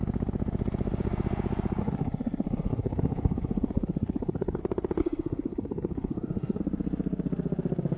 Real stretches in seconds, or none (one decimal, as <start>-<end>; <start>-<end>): 0.0-1.8; 4.6-5.0; 6.6-8.0